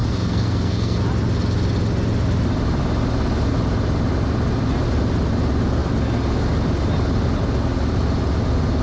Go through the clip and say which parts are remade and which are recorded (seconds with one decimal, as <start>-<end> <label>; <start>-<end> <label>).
0.0-1.0 remade; 1.0-8.8 recorded